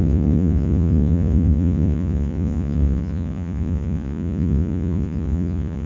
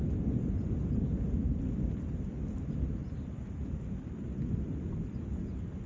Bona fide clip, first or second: second